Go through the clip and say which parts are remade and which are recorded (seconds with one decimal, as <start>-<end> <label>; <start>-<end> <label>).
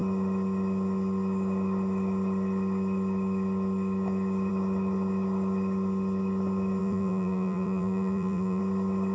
0.0-6.8 recorded; 6.8-8.6 remade; 8.6-9.1 recorded